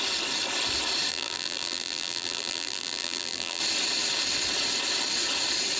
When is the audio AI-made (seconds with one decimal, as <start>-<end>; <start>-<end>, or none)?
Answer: 1.1-3.6